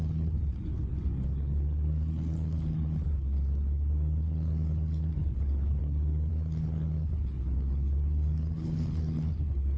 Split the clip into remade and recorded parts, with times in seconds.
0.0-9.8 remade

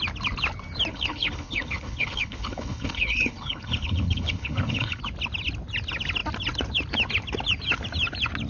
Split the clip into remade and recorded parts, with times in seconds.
0.0-0.9 recorded; 0.9-5.0 remade; 5.0-8.5 recorded

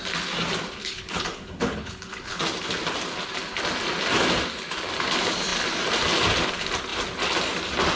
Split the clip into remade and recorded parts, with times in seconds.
0.0-0.8 recorded; 0.8-2.4 remade; 2.4-8.0 recorded

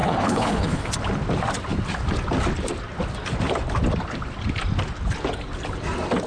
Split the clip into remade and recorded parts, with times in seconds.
0.0-0.9 remade; 0.9-6.3 recorded

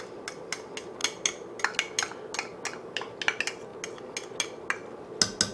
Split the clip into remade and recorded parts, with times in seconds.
0.0-5.5 recorded

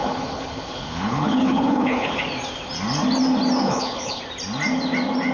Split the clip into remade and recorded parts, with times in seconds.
0.0-2.2 remade; 2.2-3.6 recorded; 3.6-4.2 remade; 4.2-5.3 recorded

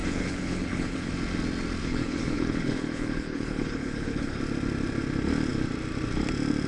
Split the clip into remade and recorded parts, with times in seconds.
0.0-1.1 remade; 1.1-1.8 recorded; 1.8-4.4 remade; 4.4-6.7 recorded

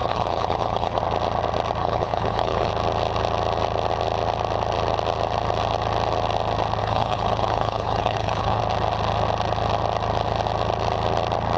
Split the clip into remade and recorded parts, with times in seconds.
0.0-1.0 remade; 1.0-1.8 recorded; 1.8-2.7 remade; 2.7-6.8 recorded; 6.8-8.6 remade; 8.6-11.6 recorded